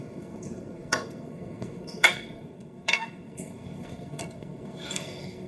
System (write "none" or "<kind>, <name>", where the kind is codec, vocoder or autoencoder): codec, SNAC